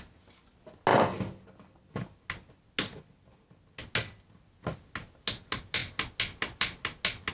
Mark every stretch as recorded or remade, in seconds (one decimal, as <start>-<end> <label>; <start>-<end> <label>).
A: 0.0-7.3 recorded